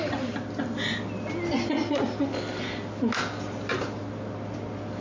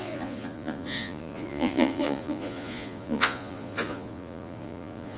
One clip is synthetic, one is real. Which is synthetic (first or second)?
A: second